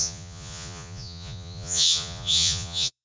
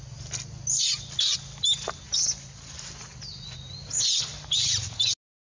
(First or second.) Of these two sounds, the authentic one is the second